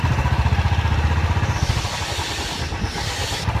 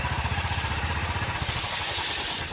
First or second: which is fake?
second